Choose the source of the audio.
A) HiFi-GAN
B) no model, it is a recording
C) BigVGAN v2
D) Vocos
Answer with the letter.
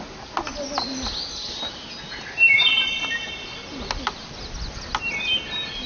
B